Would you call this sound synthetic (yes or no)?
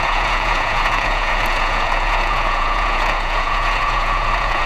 yes